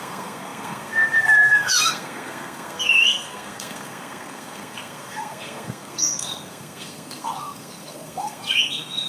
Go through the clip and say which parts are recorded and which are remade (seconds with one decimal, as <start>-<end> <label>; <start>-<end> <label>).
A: 0.0-9.1 remade